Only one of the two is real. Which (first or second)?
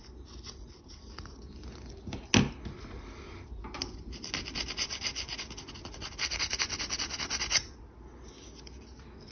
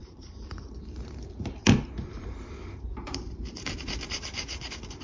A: first